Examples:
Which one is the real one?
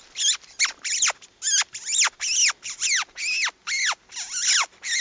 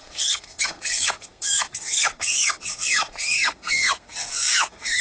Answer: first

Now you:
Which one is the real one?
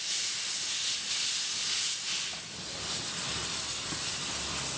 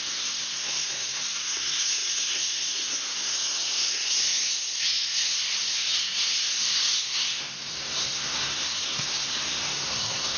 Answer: first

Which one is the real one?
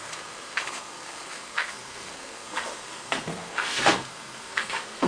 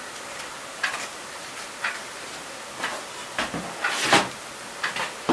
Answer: second